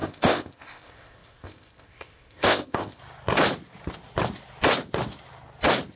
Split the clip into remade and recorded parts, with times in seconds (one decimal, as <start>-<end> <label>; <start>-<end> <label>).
0.0-3.0 remade; 3.0-6.0 recorded